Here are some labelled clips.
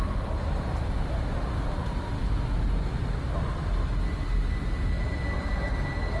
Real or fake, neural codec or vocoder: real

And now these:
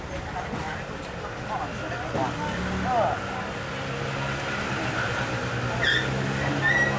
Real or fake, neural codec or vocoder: real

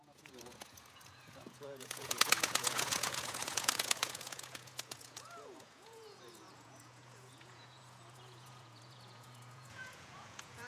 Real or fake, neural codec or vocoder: fake, vocoder, Vocos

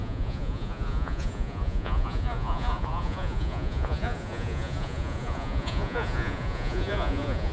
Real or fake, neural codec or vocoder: fake, vocoder, Vocos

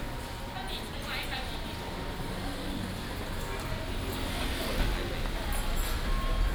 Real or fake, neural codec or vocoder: real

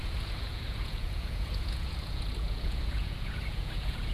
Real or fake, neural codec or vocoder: fake, vocoder, Vocos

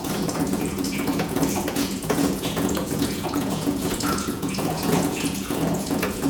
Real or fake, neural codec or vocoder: fake, vocoder, Vocos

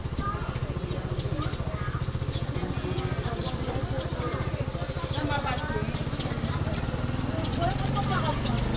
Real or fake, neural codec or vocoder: real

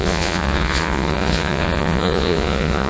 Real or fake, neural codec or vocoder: fake, vocoder, Vocos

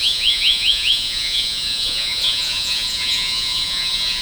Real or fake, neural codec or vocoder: fake, vocoder, Vocos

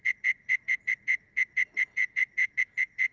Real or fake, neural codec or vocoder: fake, vocoder, Vocos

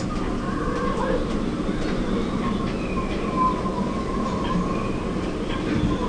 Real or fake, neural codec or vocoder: real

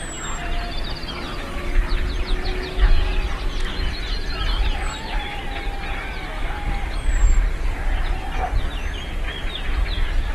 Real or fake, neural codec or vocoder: real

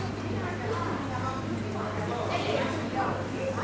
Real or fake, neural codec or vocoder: real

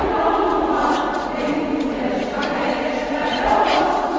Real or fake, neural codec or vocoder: fake, vocoder, Vocos